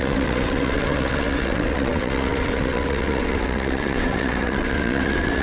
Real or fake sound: fake